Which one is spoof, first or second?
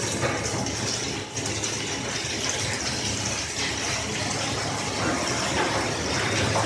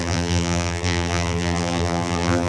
second